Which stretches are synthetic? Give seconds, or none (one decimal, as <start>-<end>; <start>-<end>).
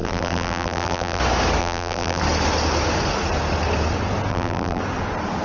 0.0-1.2; 1.6-2.2; 4.3-4.8